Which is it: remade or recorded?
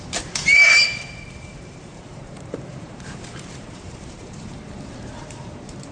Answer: remade